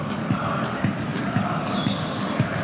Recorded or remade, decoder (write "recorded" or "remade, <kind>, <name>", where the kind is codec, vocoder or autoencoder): remade, codec, DAC